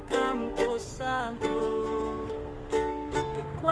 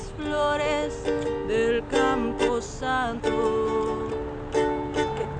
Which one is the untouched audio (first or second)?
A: second